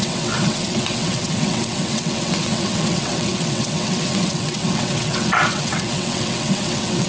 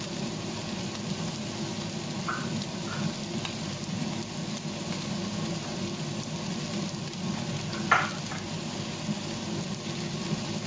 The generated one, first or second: first